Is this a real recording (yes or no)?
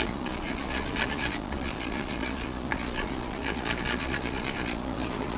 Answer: no